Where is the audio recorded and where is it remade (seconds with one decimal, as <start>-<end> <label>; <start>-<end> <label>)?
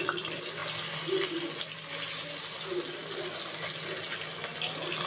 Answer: 0.0-5.1 recorded